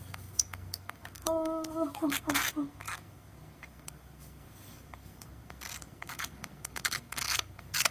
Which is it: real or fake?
fake